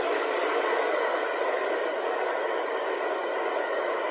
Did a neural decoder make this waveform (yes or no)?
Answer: yes